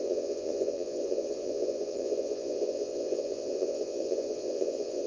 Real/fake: fake